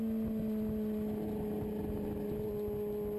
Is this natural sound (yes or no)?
yes